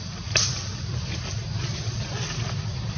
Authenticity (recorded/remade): recorded